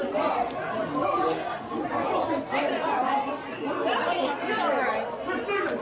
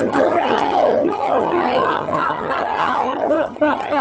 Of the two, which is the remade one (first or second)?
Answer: second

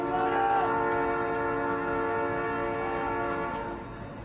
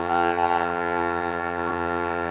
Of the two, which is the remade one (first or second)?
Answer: second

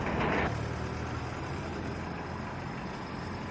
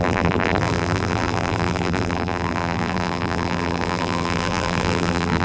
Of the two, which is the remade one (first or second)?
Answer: second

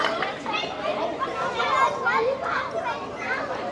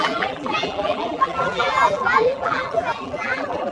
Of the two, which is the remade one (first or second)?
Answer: second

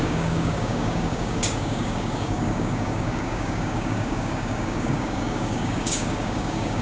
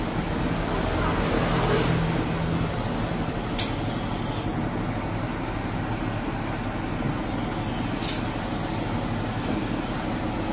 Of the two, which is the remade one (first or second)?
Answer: first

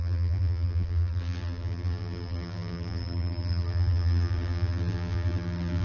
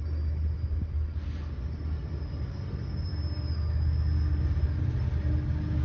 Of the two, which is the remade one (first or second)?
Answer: first